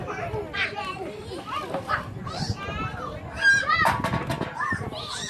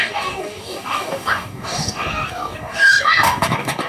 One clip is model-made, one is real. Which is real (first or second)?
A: first